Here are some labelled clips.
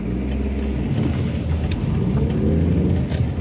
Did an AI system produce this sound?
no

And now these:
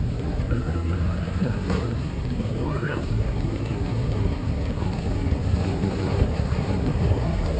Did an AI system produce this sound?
yes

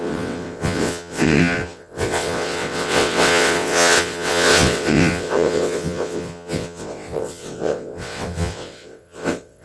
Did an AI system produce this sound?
yes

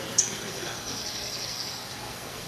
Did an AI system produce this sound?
yes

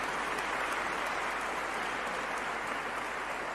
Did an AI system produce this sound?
no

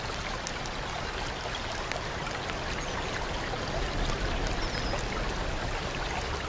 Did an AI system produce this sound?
no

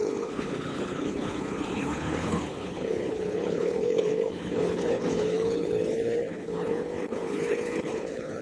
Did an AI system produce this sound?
yes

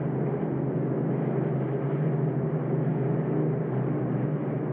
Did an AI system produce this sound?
no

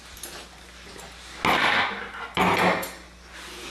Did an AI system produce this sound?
no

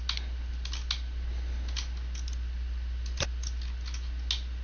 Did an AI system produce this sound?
no